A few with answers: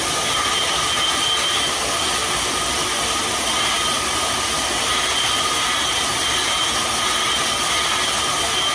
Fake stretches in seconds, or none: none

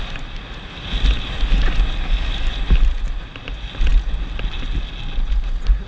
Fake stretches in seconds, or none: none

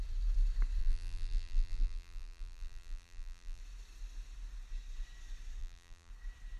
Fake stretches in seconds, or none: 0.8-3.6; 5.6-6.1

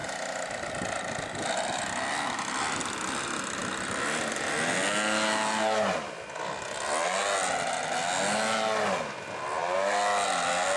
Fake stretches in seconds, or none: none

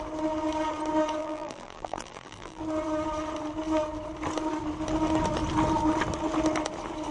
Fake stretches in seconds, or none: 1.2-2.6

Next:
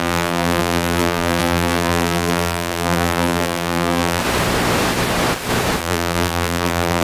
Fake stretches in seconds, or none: 0.0-4.2; 5.8-7.0